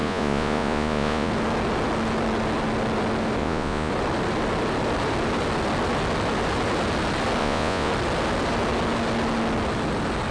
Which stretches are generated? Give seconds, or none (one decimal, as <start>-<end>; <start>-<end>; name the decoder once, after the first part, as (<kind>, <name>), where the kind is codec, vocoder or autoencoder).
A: 0.0-1.3 (vocoder, Vocos); 3.4-3.9; 7.4-7.9